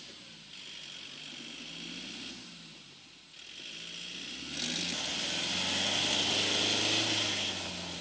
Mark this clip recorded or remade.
recorded